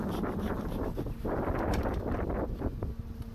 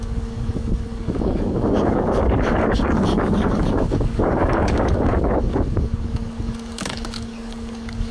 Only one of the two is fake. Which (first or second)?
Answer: second